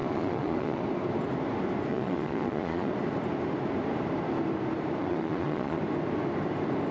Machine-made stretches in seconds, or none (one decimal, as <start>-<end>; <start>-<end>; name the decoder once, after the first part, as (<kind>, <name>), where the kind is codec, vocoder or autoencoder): 0.0-0.8 (vocoder, Vocos); 1.9-2.9; 5.0-5.8